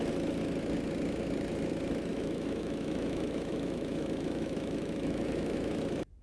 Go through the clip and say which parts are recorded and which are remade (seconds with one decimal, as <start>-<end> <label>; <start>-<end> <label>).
0.0-2.1 recorded; 2.1-5.8 remade; 5.8-6.2 recorded